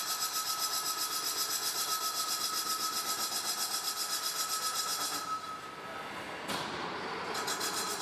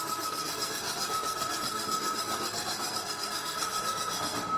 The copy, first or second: second